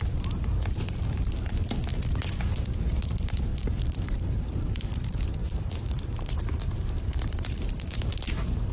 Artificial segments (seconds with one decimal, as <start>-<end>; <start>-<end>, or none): 3.5-8.0